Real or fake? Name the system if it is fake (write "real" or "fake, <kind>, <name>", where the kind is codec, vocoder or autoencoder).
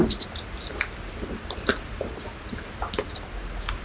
real